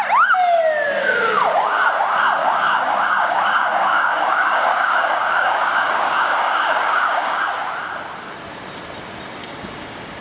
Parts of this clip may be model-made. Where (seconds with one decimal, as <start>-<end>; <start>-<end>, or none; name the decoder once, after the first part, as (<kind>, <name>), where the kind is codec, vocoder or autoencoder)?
1.0-1.9 (codec, DAC); 2.4-7.4; 9.4-10.2